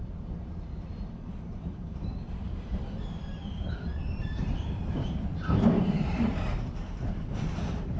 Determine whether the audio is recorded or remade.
remade